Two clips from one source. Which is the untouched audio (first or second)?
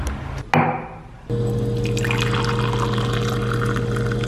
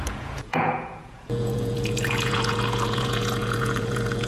first